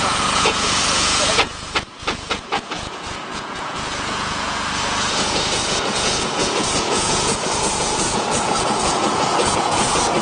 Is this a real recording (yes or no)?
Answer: no